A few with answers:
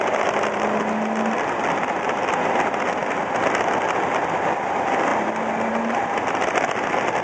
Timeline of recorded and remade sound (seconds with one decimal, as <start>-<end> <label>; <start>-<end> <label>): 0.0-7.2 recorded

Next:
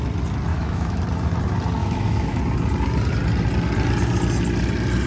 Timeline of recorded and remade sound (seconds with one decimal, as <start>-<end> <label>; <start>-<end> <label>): 0.0-0.5 recorded; 0.5-1.0 remade; 1.0-1.8 recorded; 1.8-2.4 remade; 2.4-5.1 recorded

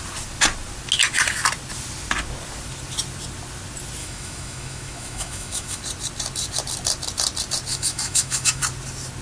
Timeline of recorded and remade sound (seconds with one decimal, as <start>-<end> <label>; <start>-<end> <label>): 0.0-4.0 recorded; 4.0-5.8 remade; 5.8-7.7 recorded; 7.7-8.6 remade; 8.6-9.2 recorded